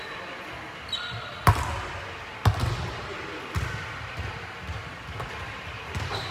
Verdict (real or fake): real